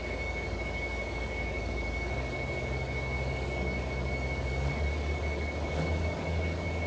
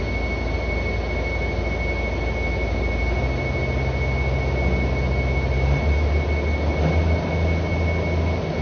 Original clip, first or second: second